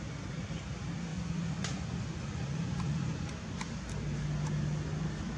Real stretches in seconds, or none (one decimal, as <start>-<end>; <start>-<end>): 0.0-1.1; 3.4-5.4